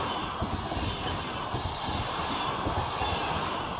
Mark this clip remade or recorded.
recorded